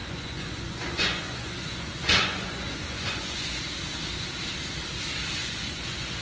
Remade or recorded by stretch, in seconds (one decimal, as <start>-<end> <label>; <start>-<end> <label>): 0.0-3.7 remade; 3.7-5.4 recorded; 5.4-6.2 remade